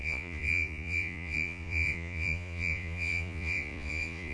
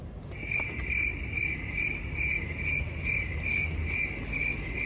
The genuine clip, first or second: second